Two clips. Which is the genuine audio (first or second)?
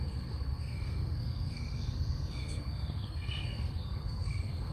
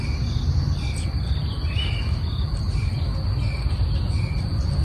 second